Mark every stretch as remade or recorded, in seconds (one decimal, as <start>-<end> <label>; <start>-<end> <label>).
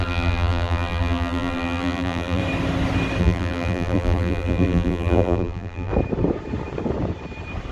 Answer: 0.0-2.4 remade; 2.4-3.2 recorded; 3.2-5.9 remade; 5.9-7.7 recorded